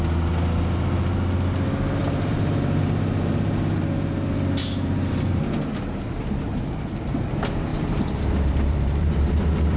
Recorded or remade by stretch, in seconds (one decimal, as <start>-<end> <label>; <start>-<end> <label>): 0.0-2.0 recorded; 2.0-3.8 remade; 3.8-4.6 recorded; 4.6-5.3 remade; 5.3-7.7 recorded; 7.7-9.4 remade; 9.4-9.8 recorded